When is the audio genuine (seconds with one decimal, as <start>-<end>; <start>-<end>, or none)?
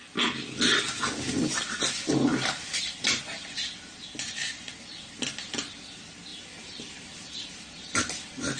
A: 0.0-2.3; 3.2-6.3; 7.7-8.6